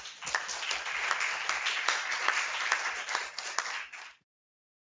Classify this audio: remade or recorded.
recorded